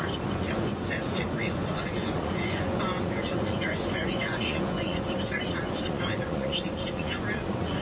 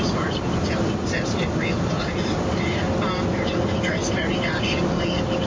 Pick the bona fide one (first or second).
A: second